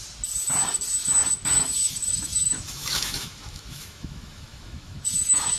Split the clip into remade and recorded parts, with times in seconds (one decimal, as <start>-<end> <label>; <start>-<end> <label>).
0.0-2.1 recorded; 2.1-5.6 remade